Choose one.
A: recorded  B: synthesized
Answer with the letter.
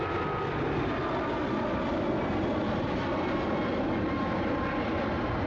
A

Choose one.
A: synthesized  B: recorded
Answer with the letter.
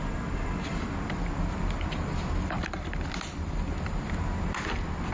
A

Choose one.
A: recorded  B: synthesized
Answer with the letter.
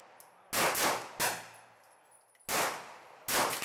A